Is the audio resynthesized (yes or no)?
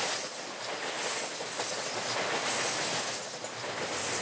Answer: no